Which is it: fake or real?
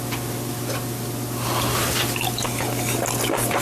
real